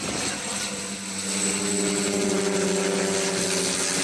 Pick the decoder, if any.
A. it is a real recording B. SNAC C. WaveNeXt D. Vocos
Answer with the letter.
A